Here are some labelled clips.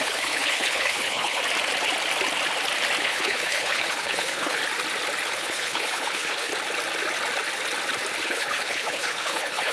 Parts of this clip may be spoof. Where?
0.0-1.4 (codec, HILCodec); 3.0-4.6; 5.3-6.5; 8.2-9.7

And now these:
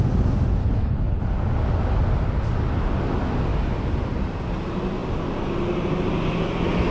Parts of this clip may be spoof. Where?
0.6-1.2 (codec, HILCodec)

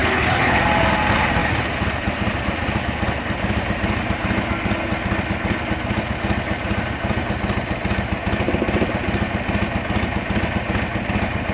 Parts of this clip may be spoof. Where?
0.0-0.6 (codec, HILCodec)

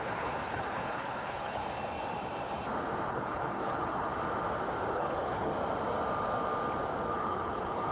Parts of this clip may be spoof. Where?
0.0-1.6 (codec, HILCodec); 3.1-4.1; 4.9-5.5; 7.1-7.9

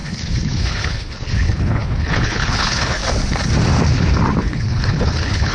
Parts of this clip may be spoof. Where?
0.0-3.0 (codec, HILCodec); 4.4-5.5